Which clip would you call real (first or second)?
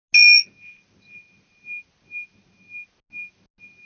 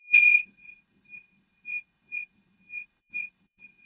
first